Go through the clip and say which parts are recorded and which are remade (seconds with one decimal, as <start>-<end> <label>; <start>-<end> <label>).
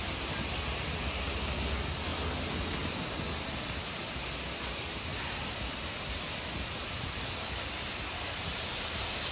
0.0-9.3 recorded